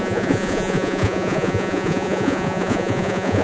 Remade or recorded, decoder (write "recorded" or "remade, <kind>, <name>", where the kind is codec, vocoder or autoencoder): remade, vocoder, Vocos